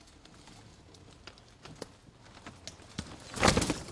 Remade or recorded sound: recorded